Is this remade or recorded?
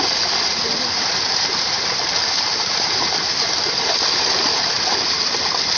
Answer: recorded